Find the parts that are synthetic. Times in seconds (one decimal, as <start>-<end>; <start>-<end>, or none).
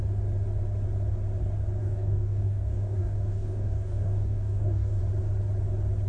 1.8-5.0